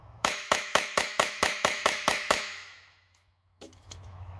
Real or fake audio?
fake